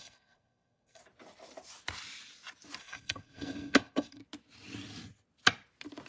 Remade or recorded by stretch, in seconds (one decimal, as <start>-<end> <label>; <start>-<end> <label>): 0.0-1.0 remade; 1.0-2.8 recorded; 2.8-4.2 remade; 4.2-6.1 recorded